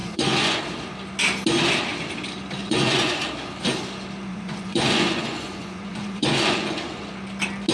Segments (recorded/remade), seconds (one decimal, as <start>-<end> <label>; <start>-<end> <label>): 0.0-0.6 remade; 0.6-2.6 recorded; 2.6-3.2 remade; 3.2-4.3 recorded; 4.3-7.1 remade; 7.1-7.7 recorded